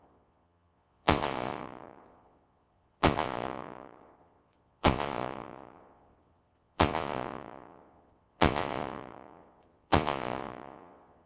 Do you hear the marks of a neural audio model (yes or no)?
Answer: yes